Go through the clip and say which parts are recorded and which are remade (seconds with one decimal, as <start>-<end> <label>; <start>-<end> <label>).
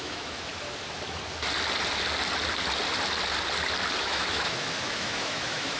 0.0-0.5 remade; 0.5-4.0 recorded; 4.0-5.8 remade